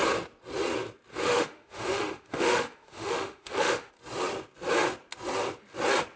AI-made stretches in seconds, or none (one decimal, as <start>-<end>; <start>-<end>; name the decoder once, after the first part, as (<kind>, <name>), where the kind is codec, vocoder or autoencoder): 1.1-3.9 (autoencoder, DAC-VAE)